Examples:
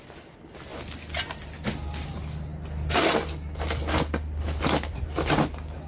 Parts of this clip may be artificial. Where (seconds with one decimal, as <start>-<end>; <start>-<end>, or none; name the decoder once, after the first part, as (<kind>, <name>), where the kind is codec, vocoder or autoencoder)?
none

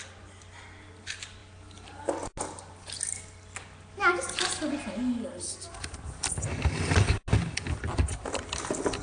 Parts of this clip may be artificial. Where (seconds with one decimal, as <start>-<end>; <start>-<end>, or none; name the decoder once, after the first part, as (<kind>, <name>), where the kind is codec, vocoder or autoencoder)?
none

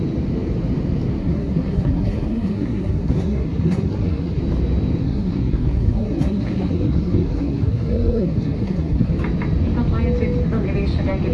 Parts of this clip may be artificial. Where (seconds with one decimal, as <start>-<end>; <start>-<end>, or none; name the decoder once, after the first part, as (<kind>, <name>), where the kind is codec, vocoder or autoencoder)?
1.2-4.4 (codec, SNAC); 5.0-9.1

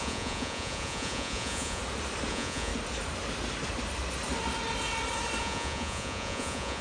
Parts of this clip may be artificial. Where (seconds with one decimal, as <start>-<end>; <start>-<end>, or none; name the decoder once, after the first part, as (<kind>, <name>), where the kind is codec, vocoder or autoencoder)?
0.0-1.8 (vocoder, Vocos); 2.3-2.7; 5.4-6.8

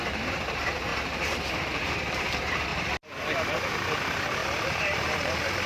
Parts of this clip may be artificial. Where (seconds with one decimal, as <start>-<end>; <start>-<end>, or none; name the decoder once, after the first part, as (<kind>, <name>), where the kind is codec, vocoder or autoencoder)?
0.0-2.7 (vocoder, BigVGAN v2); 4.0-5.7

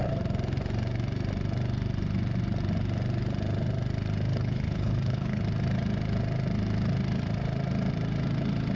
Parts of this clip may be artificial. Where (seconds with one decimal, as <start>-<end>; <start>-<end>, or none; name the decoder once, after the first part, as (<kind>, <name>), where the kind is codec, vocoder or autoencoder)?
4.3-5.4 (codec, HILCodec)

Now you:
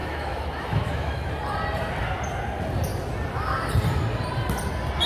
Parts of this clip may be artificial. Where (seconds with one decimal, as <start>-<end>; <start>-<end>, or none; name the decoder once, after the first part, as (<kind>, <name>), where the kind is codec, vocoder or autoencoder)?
0.0-1.3 (autoencoder, DAC-VAE)

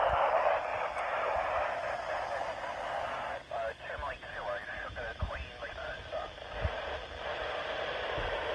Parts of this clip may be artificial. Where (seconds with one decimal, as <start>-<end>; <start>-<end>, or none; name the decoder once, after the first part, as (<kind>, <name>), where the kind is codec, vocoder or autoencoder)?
none